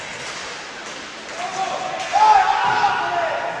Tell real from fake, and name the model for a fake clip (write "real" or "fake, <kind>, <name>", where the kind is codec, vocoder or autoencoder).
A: real